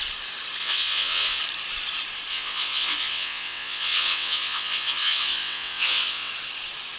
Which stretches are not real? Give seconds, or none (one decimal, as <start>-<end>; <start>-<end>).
0.6-1.4; 2.3-6.3